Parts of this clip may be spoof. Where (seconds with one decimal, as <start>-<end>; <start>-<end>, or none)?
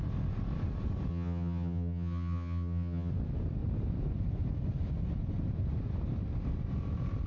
1.1-3.1